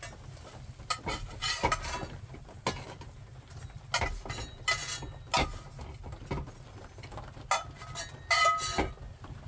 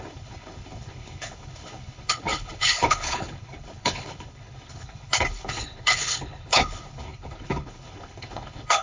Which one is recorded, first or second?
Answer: first